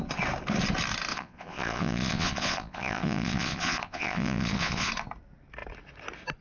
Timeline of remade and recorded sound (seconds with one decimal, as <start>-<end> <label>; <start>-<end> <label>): 0.0-1.1 recorded; 1.1-4.9 remade; 4.9-6.4 recorded